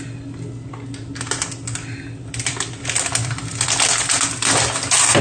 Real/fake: real